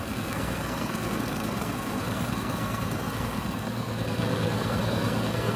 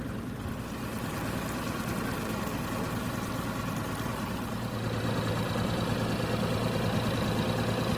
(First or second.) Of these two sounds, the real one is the second